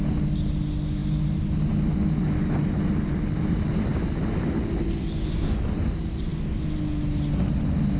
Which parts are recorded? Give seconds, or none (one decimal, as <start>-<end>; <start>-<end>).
0.0-8.0